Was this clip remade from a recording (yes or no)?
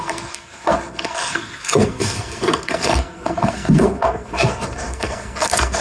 yes